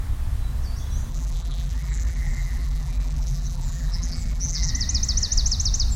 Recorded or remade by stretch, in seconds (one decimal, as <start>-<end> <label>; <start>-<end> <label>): 0.0-1.1 recorded; 1.1-4.7 remade; 4.7-6.0 recorded